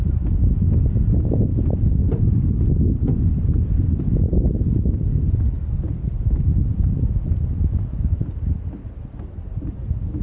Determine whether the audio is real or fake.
real